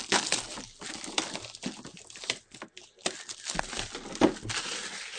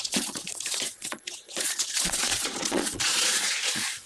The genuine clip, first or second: first